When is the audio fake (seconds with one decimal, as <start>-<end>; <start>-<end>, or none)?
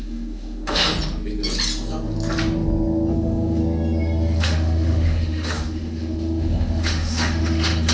0.0-0.9; 3.1-3.6; 4.4-7.9